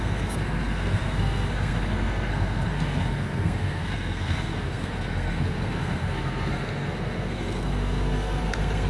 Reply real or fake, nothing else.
fake